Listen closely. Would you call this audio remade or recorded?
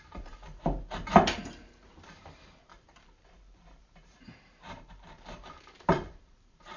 remade